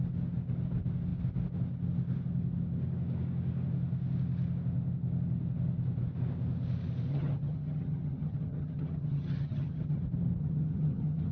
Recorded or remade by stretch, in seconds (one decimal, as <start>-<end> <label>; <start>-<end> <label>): 0.0-7.1 recorded; 7.1-10.0 remade; 10.0-10.4 recorded; 10.4-11.3 remade